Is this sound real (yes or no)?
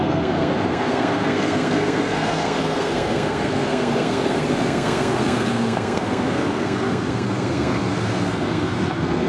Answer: no